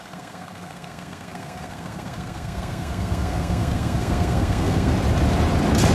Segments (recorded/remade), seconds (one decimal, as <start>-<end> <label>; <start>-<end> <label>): 0.0-4.9 remade; 4.9-5.9 recorded